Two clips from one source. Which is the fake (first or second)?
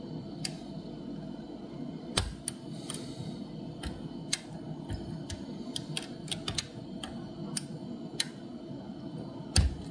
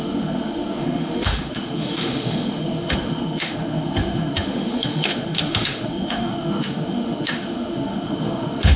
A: second